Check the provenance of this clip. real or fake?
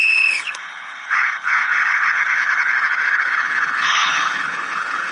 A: fake